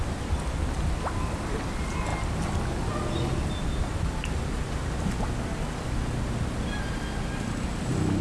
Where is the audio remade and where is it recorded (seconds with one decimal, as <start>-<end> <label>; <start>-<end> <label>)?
0.0-8.2 recorded